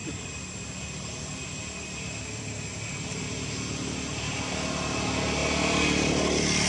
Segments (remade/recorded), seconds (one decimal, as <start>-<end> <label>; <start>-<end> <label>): 0.0-0.5 remade; 0.5-2.3 recorded; 2.3-3.2 remade; 3.2-6.7 recorded